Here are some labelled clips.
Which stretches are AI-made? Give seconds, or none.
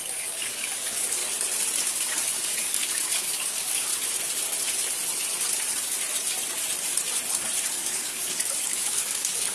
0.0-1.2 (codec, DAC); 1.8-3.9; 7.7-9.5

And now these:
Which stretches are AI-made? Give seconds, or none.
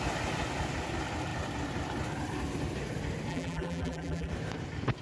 3.3-4.3 (vocoder, BigVGAN v2)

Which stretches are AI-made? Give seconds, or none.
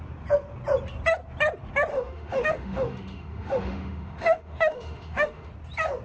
1.9-5.5 (autoencoder, DAC-VAE)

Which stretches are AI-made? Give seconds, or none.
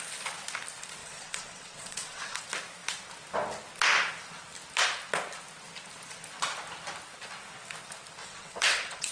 1.0-2.4 (vocoder, WaveNeXt); 8.2-9.1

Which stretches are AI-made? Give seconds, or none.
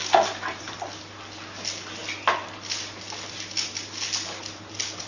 none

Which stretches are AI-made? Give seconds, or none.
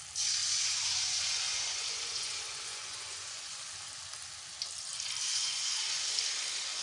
0.4-3.6 (vocoder, Vocos); 5.3-6.0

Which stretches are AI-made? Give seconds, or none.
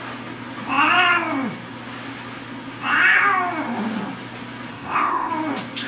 4.7-5.3 (codec, ZipCodec)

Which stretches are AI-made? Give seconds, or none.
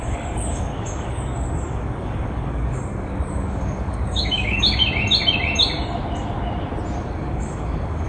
0.0-4.8 (codec, DAC); 7.0-8.1